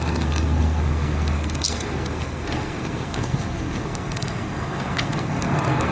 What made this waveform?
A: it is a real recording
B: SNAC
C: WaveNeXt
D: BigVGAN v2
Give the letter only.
B